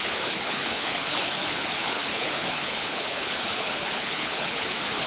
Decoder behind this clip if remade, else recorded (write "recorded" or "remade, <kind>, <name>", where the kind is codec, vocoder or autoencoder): remade, codec, HILCodec